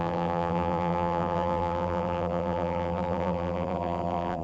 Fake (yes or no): yes